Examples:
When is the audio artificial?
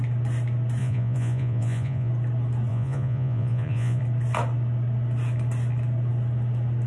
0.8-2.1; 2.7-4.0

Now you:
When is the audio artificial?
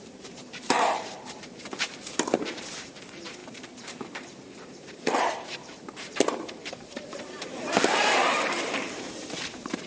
0.0-9.9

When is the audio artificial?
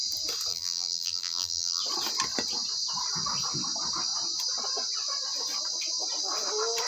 0.5-1.8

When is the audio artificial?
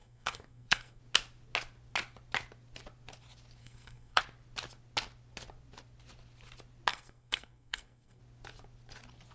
0.0-1.0; 3.6-4.2; 6.9-8.2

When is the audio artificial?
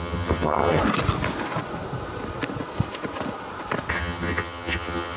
0.0-0.8; 3.9-5.2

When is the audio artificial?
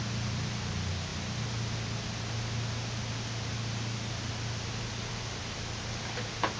none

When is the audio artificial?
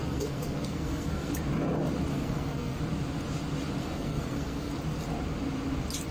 0.0-1.3; 2.1-2.8; 3.8-4.7